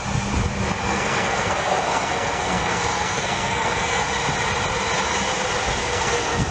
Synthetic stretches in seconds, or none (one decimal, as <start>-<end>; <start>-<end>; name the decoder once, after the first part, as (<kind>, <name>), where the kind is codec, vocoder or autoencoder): 0.8-4.0 (codec, SNAC); 5.8-6.5